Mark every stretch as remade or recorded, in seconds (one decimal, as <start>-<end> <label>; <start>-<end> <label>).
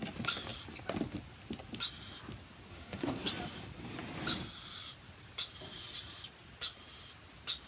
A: 0.0-2.7 recorded; 2.7-3.3 remade; 3.3-7.7 recorded